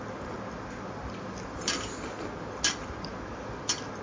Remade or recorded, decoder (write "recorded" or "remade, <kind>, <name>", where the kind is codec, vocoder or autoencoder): recorded